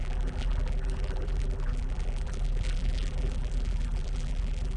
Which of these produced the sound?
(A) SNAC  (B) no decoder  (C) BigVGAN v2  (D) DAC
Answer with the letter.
C